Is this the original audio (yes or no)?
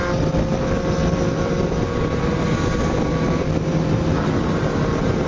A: yes